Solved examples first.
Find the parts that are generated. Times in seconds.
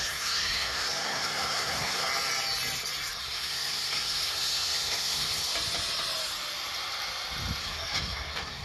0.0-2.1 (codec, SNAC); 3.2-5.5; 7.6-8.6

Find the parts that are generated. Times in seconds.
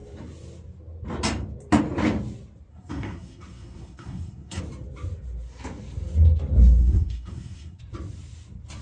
2.7-4.6 (codec, SNAC); 6.8-7.8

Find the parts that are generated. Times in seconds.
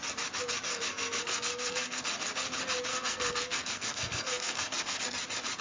0.7-2.0 (codec, SNAC); 2.9-5.0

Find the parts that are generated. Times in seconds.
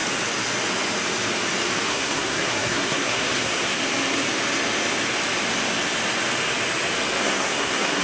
1.9-3.8 (codec, SNAC); 7.2-8.0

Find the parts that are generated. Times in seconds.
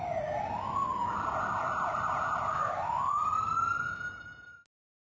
none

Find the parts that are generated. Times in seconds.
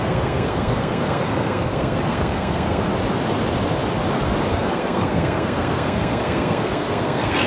0.0-2.9 (codec, SNAC); 4.5-7.5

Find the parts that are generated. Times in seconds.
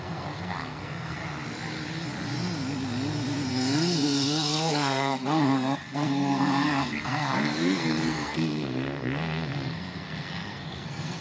0.0-1.2 (codec, SNAC); 3.5-11.2